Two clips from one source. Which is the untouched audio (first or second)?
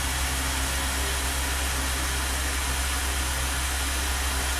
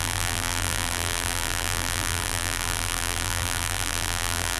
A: first